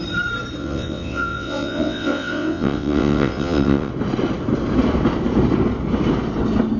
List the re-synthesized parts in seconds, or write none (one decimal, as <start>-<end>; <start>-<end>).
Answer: 0.6-3.9